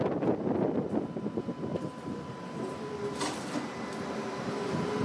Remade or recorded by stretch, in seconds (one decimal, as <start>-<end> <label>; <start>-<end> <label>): 0.0-1.7 recorded; 1.7-2.9 remade; 2.9-5.0 recorded